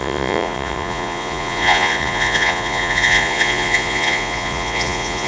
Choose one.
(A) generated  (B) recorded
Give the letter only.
A